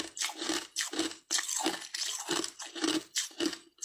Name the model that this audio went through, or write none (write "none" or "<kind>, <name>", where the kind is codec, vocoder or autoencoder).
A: none